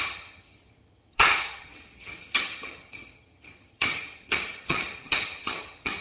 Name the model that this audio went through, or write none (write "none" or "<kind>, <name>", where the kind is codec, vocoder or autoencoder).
vocoder, HiFi-GAN